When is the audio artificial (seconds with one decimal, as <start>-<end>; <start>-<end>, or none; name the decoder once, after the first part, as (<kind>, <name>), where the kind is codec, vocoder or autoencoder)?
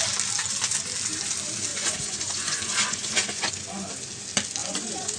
1.7-3.5 (vocoder, Vocos); 4.6-5.2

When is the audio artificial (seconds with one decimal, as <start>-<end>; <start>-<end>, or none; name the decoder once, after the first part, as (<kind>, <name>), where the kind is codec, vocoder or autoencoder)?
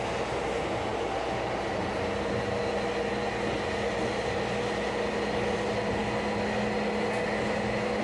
none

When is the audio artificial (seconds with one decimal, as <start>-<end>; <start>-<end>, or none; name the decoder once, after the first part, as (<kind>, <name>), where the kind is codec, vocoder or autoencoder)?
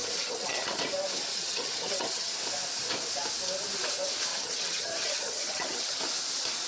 0.0-0.8 (vocoder, HiFi-GAN); 1.3-2.3; 4.3-6.0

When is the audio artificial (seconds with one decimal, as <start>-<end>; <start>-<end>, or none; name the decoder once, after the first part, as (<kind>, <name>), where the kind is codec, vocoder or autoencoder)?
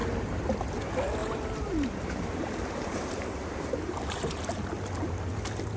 1.2-4.7 (vocoder, BigVGAN v2)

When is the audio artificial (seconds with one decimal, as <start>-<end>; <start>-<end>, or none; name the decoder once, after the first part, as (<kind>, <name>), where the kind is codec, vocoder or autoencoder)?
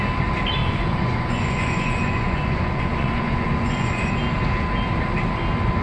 0.6-4.1 (vocoder, Vocos)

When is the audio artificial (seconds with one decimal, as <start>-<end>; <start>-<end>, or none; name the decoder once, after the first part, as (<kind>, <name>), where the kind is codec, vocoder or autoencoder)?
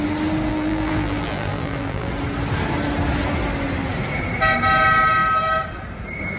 0.5-2.1 (vocoder, BigVGAN v2)